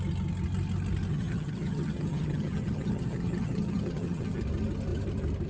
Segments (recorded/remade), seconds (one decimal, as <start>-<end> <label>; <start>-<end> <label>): 0.0-1.1 recorded; 1.1-4.4 remade; 4.4-5.5 recorded